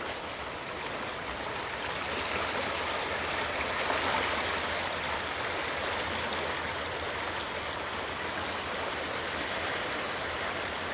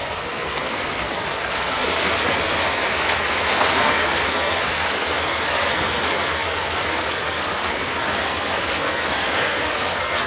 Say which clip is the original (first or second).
first